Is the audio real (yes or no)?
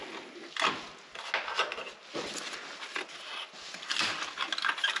yes